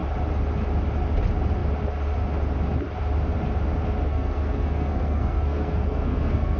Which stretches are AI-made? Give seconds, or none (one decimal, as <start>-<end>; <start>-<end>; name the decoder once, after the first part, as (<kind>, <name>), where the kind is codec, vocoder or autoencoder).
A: 4.1-6.6 (codec, SNAC)